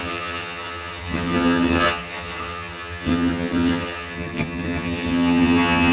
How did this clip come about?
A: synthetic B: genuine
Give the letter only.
A